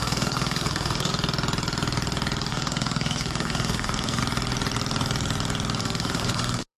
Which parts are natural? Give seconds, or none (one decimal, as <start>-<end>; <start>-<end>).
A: 1.1-2.5; 4.2-5.8